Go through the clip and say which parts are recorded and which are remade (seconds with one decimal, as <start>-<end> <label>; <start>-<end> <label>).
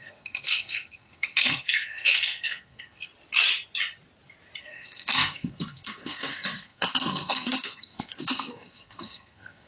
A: 0.0-3.1 remade; 3.1-4.6 recorded; 4.6-9.7 remade